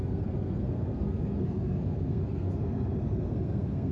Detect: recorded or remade remade